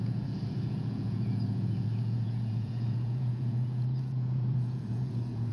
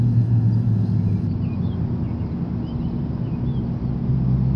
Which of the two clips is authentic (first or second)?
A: second